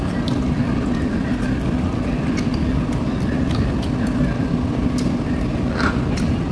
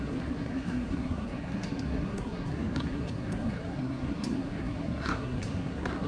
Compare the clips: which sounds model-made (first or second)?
second